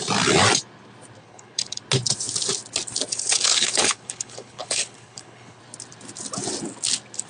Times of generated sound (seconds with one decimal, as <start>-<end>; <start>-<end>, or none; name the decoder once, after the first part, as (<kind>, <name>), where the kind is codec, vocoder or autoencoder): 1.2-1.8 (codec, HILCodec); 3.1-5.6